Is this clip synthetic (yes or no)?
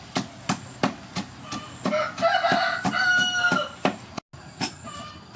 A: no